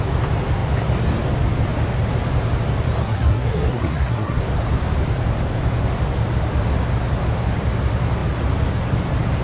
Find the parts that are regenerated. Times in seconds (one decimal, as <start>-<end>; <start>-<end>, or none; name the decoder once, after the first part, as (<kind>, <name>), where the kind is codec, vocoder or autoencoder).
3.0-4.4 (codec, SNAC)